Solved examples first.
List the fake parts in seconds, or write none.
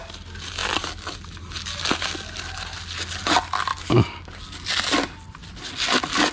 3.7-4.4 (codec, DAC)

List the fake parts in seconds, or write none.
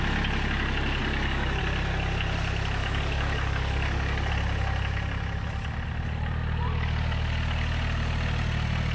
1.0-1.6 (codec, DAC); 2.8-4.3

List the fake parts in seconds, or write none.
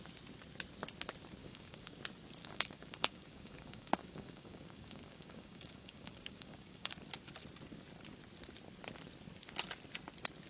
1.4-2.0 (codec, DAC); 2.4-6.9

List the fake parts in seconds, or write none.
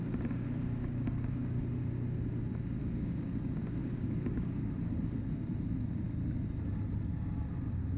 0.8-1.6 (codec, DAC); 2.8-3.4; 3.8-4.7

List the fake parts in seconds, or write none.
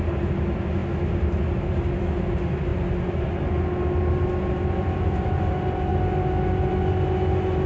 none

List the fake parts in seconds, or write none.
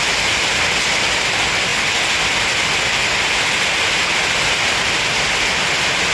none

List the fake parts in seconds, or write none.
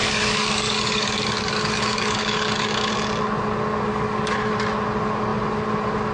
0.0-2.9 (codec, DAC); 3.9-4.5